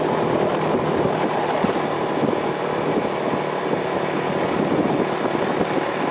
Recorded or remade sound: recorded